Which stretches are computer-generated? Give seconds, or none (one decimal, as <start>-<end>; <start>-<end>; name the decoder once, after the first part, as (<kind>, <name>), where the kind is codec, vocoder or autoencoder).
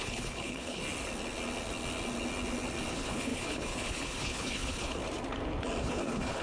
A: 0.0-0.8 (codec, HILCodec); 2.9-5.0; 5.8-6.4